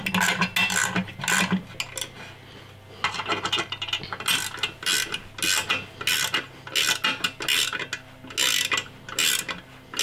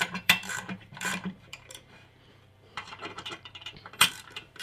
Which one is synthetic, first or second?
second